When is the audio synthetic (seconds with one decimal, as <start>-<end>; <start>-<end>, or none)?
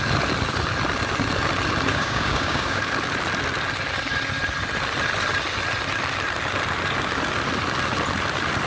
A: 1.9-2.8